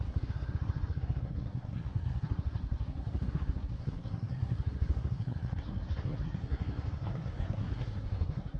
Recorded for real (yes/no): no